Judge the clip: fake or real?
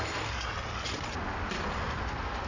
real